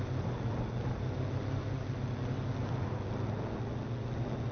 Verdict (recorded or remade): recorded